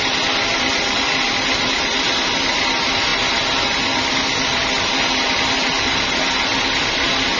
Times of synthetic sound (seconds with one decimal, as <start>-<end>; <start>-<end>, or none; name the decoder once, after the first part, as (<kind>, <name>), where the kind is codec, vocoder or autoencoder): none